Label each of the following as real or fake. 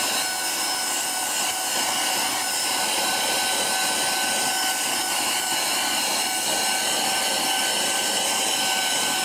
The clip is real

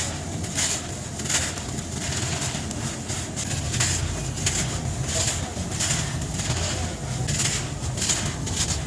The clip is real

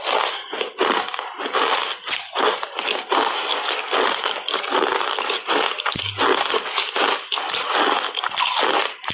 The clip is real